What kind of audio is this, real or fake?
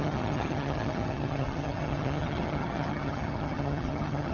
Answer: fake